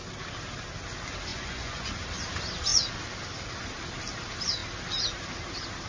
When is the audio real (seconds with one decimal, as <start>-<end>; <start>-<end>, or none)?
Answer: 0.0-1.3; 1.9-5.9